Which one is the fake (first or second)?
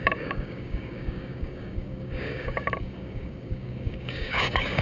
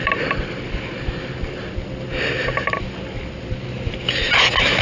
first